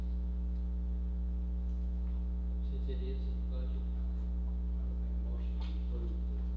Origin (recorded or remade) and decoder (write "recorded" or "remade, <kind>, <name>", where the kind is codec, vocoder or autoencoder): recorded